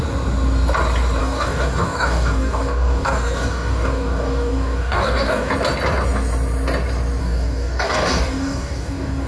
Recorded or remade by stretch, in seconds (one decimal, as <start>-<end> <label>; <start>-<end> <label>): 0.0-1.2 recorded; 1.2-5.5 remade; 5.5-7.2 recorded; 7.2-9.3 remade